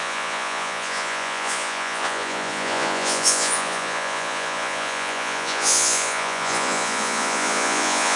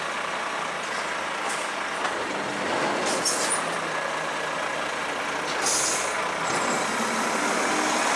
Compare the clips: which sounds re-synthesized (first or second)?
first